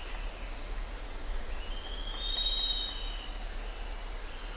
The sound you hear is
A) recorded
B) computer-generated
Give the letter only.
A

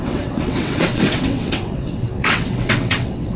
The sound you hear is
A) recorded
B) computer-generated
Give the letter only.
B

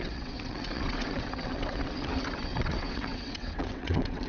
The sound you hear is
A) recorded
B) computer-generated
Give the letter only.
B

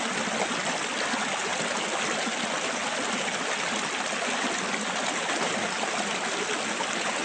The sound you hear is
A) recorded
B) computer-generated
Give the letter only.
A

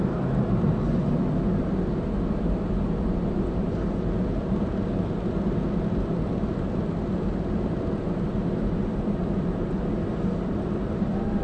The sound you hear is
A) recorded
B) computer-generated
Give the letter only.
A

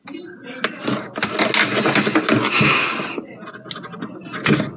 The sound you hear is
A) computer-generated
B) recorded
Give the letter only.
B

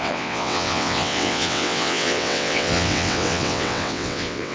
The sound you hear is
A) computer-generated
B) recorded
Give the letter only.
A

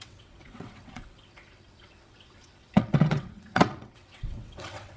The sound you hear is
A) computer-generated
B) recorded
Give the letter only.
A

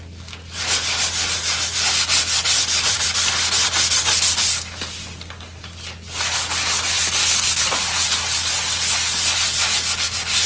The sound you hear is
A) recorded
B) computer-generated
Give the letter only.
A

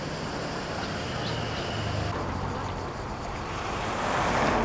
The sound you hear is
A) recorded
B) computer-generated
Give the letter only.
A